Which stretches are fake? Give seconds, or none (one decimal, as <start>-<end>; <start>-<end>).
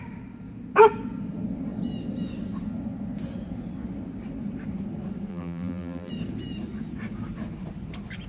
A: 5.3-6.1